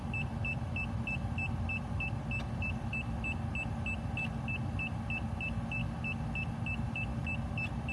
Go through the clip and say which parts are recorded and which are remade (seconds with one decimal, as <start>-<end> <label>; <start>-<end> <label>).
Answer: 0.0-7.9 recorded